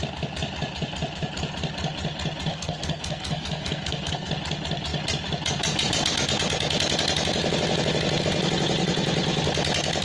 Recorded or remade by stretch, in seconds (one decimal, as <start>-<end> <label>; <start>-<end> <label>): 0.0-2.5 recorded; 2.5-4.3 remade; 4.3-10.0 recorded